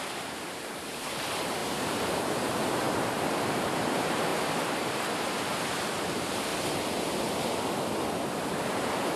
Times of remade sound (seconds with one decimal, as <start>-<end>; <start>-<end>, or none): 0.0-6.5; 8.3-9.2